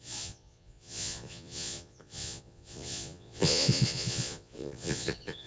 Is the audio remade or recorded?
remade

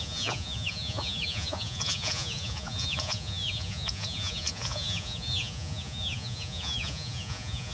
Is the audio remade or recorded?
remade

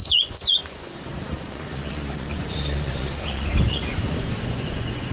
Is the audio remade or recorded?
remade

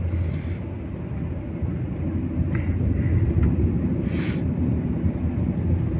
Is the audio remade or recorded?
recorded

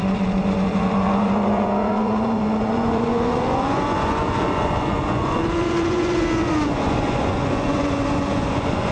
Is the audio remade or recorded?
remade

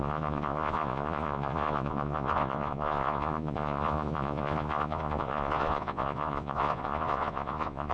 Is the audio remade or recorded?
remade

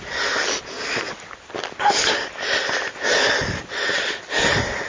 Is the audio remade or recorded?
recorded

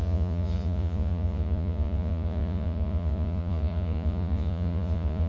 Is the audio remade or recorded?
remade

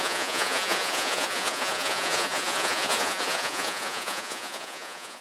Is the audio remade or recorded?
remade